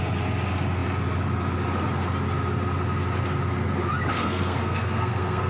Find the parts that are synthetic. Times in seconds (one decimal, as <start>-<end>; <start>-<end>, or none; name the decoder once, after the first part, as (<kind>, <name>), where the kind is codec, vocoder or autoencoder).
4.1-5.5 (codec, SNAC)